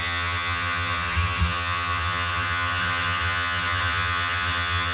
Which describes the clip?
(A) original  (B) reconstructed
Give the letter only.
B